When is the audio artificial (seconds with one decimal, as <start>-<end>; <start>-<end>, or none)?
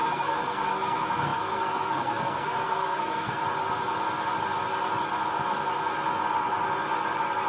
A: 0.0-3.4